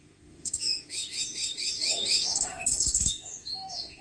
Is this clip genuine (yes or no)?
no